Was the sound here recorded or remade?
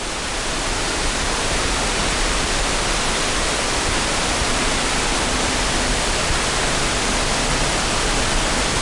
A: recorded